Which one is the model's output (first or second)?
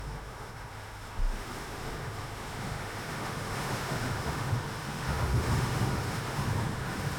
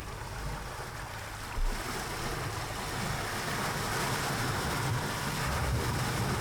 first